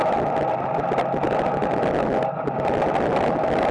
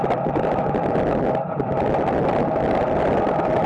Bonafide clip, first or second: first